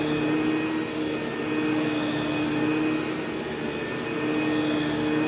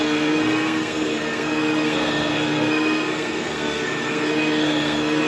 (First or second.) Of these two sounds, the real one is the first